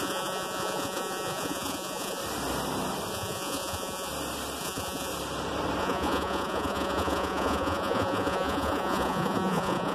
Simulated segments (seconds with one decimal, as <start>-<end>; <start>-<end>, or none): 0.0-2.2; 3.1-4.1; 4.6-5.1; 5.8-9.9